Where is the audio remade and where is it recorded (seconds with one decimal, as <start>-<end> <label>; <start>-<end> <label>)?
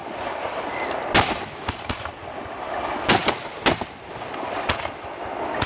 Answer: 0.0-1.9 remade; 1.9-5.7 recorded